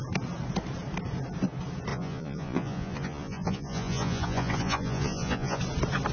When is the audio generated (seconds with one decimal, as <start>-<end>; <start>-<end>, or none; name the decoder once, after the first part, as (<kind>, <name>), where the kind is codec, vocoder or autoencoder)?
1.9-5.6 (vocoder, Vocos)

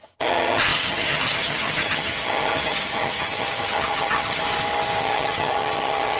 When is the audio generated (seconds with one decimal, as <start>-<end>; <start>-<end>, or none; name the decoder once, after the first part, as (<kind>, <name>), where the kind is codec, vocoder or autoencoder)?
0.0-4.4 (vocoder, HiFi-GAN); 5.0-6.2

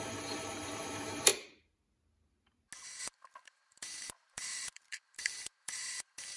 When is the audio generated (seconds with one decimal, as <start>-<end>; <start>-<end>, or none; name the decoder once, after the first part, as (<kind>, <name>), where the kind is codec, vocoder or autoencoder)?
0.0-1.3 (vocoder, BigVGAN v2); 3.0-6.4

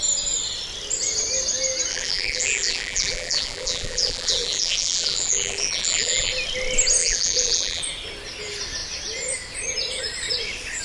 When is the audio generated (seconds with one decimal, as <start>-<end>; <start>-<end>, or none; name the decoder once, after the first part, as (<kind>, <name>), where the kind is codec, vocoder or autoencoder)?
1.9-6.3 (vocoder, BigVGAN v2); 7.0-7.8

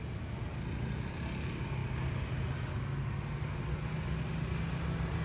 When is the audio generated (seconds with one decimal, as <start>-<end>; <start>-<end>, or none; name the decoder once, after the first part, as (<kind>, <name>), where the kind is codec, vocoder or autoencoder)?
none

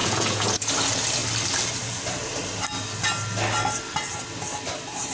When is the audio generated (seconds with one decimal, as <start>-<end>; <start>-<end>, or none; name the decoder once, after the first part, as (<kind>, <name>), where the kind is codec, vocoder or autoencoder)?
0.0-0.7 (vocoder, Vocos)